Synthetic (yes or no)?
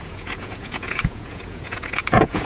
yes